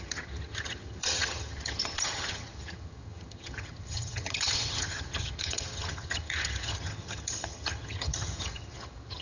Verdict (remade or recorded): remade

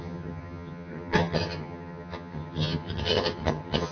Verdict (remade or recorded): remade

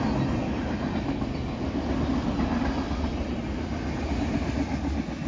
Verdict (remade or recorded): recorded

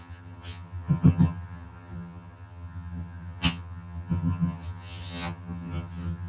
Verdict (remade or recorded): remade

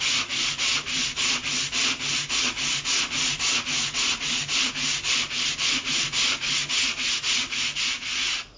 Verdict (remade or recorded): recorded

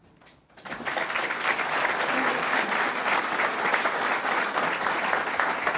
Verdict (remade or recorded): recorded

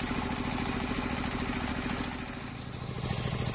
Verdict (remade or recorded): recorded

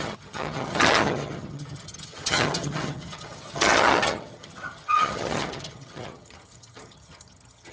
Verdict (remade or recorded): remade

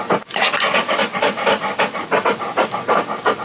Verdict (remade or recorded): recorded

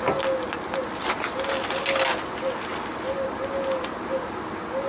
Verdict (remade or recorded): recorded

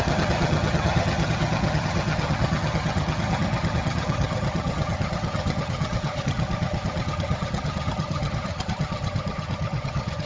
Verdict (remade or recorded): remade